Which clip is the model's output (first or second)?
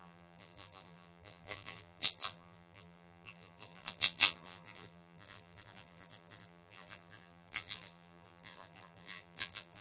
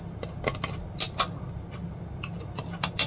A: first